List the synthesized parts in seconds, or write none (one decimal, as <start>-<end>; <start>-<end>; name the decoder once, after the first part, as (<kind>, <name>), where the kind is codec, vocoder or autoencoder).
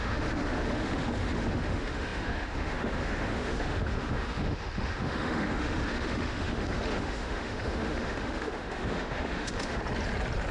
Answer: 0.0-9.8 (autoencoder, DAC-VAE)